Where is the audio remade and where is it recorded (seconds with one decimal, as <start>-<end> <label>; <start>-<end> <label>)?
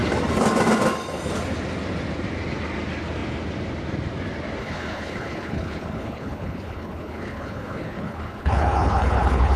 0.0-4.6 recorded; 4.6-9.6 remade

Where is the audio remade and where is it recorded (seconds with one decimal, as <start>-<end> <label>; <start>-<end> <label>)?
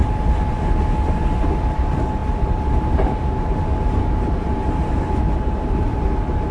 0.0-6.5 recorded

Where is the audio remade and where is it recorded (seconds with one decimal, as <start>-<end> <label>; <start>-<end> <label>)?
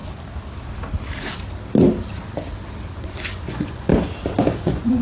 0.0-3.0 recorded; 3.0-3.9 remade; 3.9-4.4 recorded; 4.4-5.0 remade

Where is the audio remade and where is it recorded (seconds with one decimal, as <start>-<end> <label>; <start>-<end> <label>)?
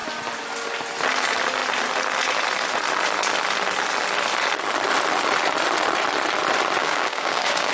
0.0-6.8 recorded; 6.8-7.7 remade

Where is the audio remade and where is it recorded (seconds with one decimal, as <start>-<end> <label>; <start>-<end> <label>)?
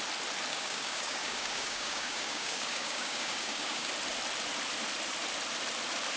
0.0-0.5 recorded; 0.5-3.9 remade; 3.9-6.2 recorded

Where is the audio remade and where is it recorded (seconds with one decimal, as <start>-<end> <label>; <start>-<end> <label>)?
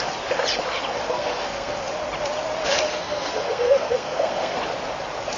0.0-1.0 recorded; 1.0-1.8 remade; 1.8-2.9 recorded; 2.9-4.6 remade; 4.6-5.4 recorded